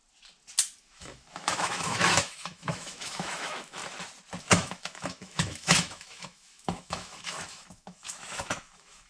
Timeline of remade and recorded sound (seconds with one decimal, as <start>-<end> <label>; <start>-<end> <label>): 0.0-0.8 recorded; 0.8-3.8 remade; 3.8-4.4 recorded; 4.4-9.1 remade